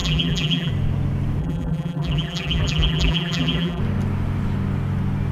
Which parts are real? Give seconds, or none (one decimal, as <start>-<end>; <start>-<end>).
0.7-1.4; 3.8-5.3